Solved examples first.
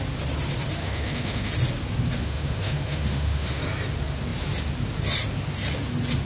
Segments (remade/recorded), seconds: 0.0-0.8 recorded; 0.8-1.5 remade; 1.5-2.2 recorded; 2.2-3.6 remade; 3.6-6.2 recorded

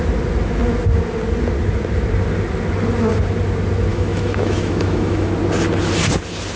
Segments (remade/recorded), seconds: 0.0-3.9 recorded; 3.9-5.3 remade; 5.3-6.6 recorded

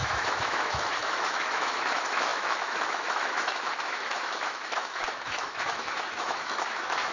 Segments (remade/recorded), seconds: 0.0-7.1 remade

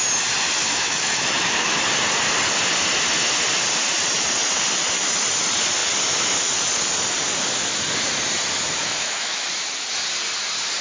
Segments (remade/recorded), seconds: 0.0-0.6 recorded; 0.6-1.8 remade; 1.8-8.8 recorded; 8.8-9.5 remade; 9.5-10.8 recorded

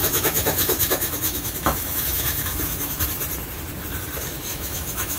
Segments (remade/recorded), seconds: 0.0-3.0 remade; 3.0-4.5 recorded; 4.5-5.2 remade

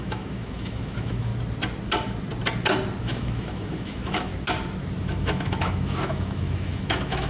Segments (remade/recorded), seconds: 0.0-1.3 remade; 1.3-3.0 recorded; 3.0-4.3 remade; 4.3-5.0 recorded; 5.0-7.3 remade